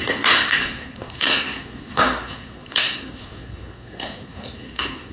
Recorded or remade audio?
remade